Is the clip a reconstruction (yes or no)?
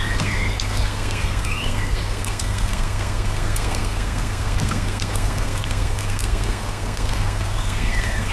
yes